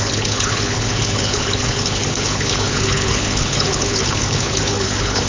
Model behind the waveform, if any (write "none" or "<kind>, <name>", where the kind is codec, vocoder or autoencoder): codec, HILCodec